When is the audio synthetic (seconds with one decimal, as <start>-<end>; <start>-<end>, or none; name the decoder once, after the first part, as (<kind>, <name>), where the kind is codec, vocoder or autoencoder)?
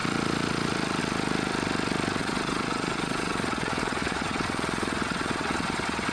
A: 2.2-6.1 (vocoder, WaveNeXt)